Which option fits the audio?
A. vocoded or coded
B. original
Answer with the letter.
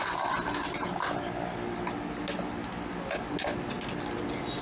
B